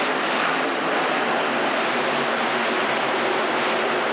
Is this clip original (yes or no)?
yes